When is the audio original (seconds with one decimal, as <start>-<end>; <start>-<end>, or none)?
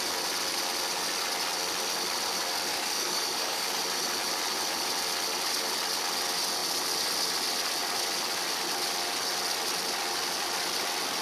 0.0-2.7; 3.8-11.2